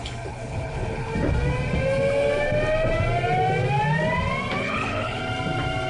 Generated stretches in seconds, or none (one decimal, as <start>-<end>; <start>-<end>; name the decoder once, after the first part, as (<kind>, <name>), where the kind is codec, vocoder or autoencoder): 0.0-1.1 (codec, HILCodec); 4.6-5.2

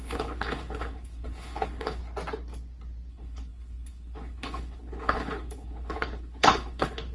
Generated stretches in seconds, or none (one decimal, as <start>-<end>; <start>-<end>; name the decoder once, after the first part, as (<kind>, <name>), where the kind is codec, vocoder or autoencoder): 0.0-2.0 (codec, HILCodec); 3.1-7.1

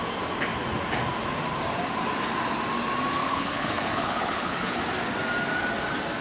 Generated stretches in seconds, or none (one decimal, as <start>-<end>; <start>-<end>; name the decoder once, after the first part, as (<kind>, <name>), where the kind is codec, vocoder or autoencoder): 3.2-4.8 (codec, HILCodec)

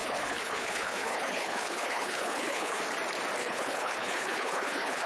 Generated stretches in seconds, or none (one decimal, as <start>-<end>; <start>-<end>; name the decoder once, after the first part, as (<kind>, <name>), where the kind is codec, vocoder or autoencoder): 0.0-2.8 (codec, HILCodec); 3.4-5.1